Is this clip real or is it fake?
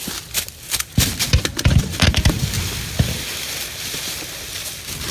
real